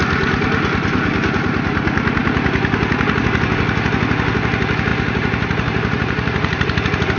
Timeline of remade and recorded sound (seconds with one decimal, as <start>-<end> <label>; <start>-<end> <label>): 0.0-4.9 recorded; 4.9-7.2 remade

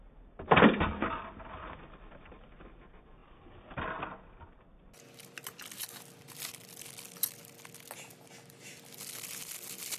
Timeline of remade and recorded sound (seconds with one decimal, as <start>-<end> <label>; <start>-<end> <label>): 0.0-10.0 recorded

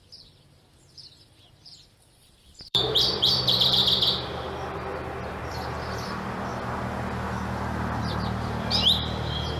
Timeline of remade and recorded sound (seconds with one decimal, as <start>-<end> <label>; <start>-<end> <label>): 0.0-3.8 remade; 3.8-5.3 recorded; 5.3-6.5 remade; 6.5-8.0 recorded; 8.0-9.6 remade

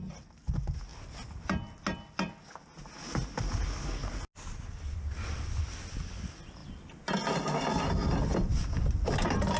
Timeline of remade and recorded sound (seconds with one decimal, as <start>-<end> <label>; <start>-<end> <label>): 0.0-9.6 recorded

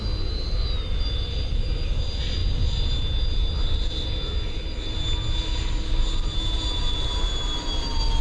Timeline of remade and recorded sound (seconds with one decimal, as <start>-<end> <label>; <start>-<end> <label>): 0.0-8.2 recorded

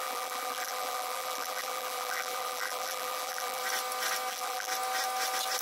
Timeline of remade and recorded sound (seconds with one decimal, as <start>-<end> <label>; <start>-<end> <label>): 0.0-3.6 remade; 3.6-4.3 recorded; 4.3-4.7 remade; 4.7-5.6 recorded

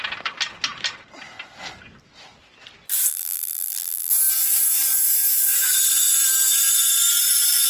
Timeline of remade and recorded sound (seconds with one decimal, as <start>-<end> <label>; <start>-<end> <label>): 0.0-3.1 recorded; 3.1-4.1 remade; 4.1-7.7 recorded